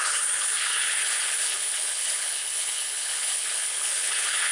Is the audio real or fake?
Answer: fake